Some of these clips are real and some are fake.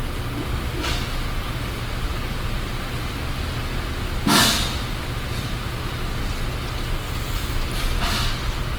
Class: real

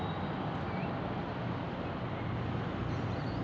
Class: real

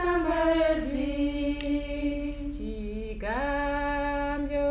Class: real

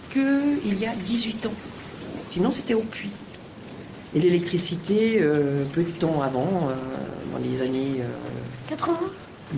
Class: real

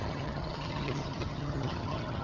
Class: fake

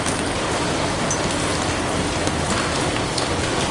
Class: real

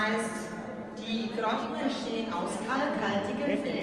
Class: real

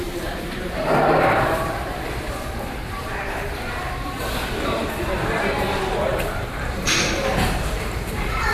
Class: fake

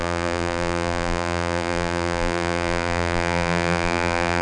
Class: fake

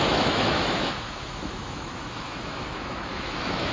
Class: fake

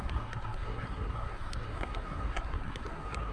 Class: fake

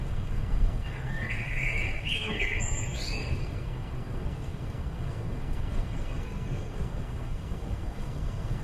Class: fake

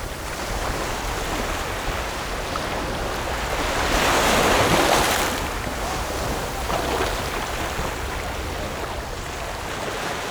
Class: real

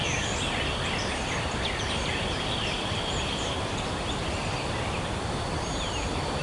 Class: real